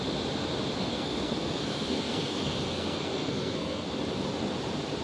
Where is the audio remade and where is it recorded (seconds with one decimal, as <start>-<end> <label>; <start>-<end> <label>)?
0.0-0.9 recorded; 0.9-3.9 remade; 3.9-5.0 recorded